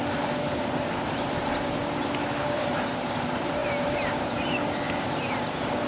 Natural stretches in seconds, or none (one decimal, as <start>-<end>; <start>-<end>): none